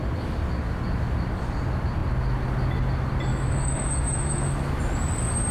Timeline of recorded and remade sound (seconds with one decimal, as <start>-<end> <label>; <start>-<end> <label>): 0.0-3.3 recorded; 3.3-4.8 remade; 4.8-5.5 recorded